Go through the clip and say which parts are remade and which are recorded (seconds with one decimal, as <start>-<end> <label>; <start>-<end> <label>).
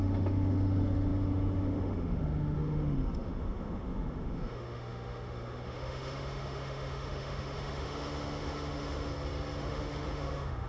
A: 0.0-9.1 remade; 9.1-9.6 recorded; 9.6-10.7 remade